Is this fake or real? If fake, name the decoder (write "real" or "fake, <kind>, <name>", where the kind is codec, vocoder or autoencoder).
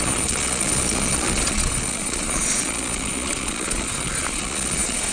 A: fake, vocoder, Vocos